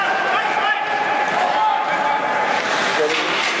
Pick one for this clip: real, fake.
real